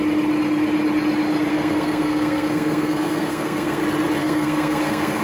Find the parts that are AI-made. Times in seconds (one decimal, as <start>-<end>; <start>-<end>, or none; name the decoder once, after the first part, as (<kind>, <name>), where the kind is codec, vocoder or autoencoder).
1.5-3.8 (codec, SNAC); 4.2-5.2

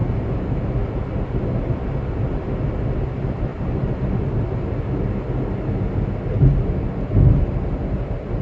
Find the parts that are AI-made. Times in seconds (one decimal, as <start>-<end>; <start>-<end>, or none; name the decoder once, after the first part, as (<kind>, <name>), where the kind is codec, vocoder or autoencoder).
none

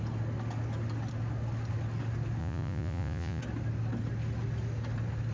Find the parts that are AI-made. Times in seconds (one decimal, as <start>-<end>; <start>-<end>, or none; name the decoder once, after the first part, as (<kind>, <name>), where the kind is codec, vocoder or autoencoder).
2.4-3.4 (vocoder, Vocos)

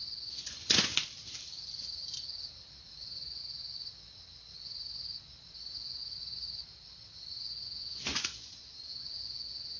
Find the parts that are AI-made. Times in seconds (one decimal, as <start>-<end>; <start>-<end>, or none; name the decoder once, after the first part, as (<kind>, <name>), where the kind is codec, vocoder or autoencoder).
0.0-0.9 (vocoder, Vocos); 3.0-3.4; 5.5-6.0; 7.3-9.8

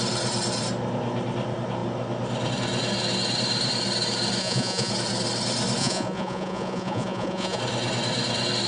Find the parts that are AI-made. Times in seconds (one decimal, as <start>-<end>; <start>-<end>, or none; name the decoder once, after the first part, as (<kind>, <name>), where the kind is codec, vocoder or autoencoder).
4.4-4.9 (vocoder, Vocos); 5.8-7.6